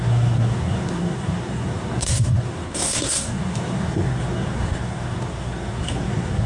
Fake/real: fake